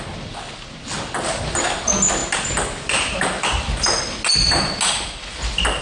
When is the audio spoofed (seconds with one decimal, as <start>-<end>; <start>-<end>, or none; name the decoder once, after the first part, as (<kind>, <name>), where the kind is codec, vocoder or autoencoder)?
none